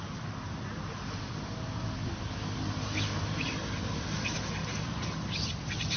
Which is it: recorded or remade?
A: recorded